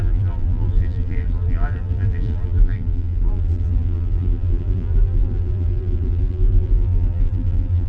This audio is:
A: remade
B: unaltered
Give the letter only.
A